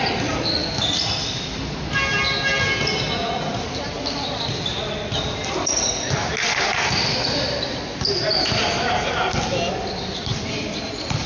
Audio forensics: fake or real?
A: real